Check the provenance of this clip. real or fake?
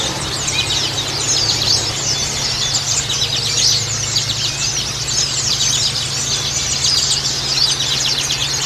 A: real